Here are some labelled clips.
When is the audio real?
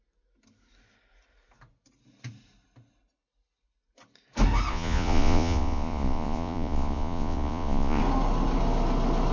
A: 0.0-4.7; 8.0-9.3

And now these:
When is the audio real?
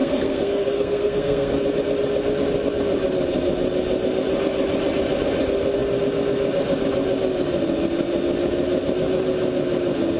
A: 1.5-10.2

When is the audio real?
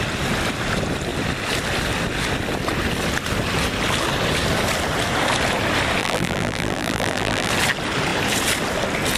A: 0.0-6.0; 7.5-9.2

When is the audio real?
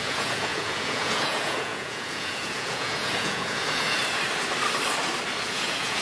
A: 4.0-5.5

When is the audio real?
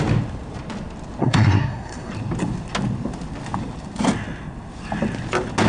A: 0.0-1.2; 2.1-5.7